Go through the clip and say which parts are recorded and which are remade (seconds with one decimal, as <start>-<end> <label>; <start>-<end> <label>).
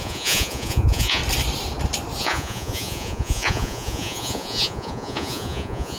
0.0-1.2 remade; 1.2-2.2 recorded; 2.2-6.0 remade